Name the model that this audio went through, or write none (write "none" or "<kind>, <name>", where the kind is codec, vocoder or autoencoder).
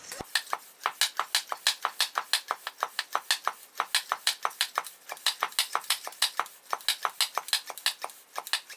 none